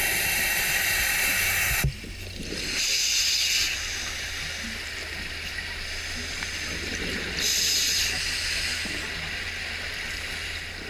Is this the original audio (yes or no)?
yes